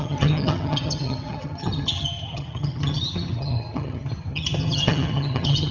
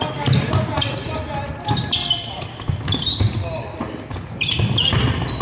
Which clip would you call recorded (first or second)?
second